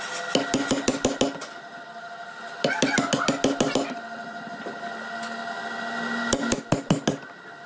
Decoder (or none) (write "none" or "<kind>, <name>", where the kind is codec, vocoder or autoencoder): none